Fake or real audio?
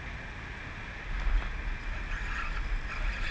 real